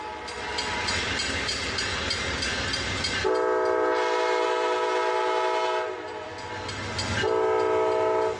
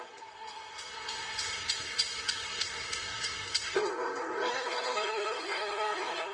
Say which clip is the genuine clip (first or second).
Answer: first